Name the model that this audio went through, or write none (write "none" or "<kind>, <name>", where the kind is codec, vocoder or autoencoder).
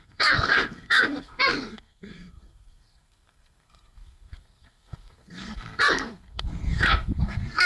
codec, SNAC